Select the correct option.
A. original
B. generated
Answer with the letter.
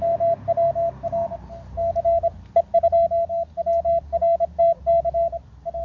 A